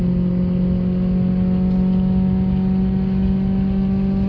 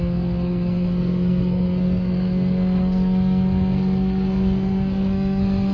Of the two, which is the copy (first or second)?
second